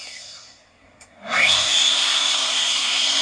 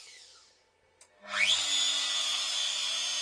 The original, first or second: second